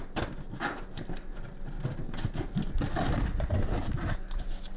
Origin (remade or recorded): recorded